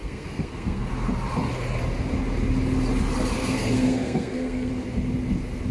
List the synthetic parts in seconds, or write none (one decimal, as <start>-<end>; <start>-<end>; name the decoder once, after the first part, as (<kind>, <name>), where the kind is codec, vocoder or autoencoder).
0.0-0.9 (codec, SNAC); 3.4-4.7